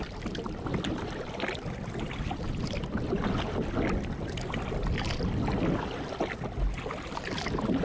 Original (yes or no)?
yes